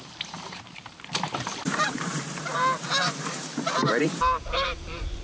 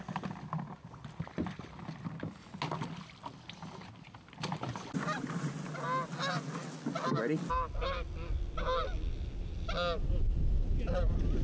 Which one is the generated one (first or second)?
first